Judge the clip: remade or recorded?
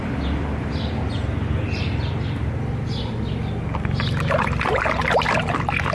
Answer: recorded